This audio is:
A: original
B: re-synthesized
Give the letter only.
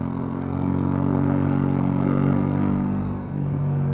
B